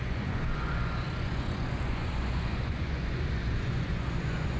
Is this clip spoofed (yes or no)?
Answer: yes